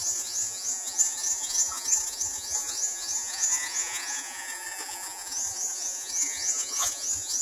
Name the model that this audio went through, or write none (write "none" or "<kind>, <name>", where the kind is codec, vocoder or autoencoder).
vocoder, Vocos